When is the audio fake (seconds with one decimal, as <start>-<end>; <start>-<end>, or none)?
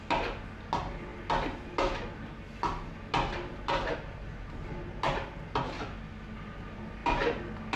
none